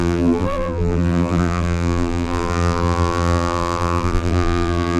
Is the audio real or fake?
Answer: fake